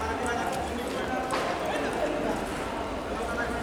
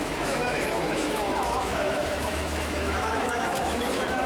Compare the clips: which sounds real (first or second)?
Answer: first